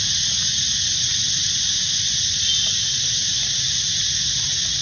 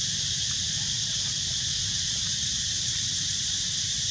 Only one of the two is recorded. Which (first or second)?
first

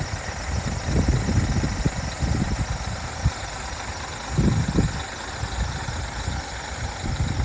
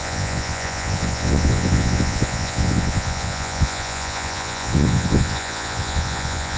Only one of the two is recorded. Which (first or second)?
first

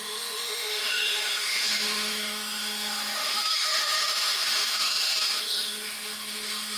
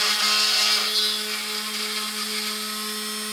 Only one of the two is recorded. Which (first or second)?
second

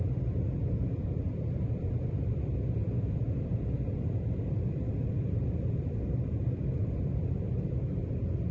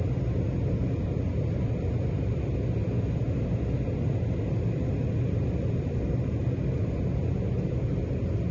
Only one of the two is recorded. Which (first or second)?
second